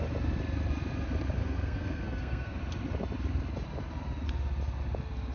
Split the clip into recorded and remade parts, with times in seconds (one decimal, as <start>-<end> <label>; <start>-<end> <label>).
0.0-1.4 recorded; 1.4-2.6 remade; 2.6-5.3 recorded